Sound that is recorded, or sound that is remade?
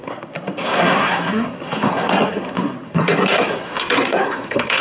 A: remade